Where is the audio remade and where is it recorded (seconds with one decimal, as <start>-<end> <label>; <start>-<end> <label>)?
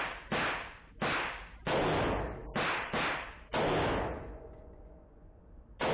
0.0-4.1 recorded; 4.1-5.4 remade; 5.4-5.9 recorded